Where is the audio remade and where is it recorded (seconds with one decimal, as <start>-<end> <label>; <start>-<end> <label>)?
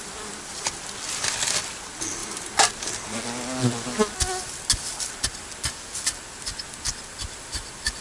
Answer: 0.0-8.0 recorded